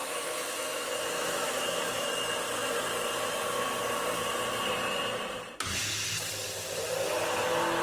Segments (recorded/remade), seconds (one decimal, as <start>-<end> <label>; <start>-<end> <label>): 0.0-2.1 remade; 2.1-7.8 recorded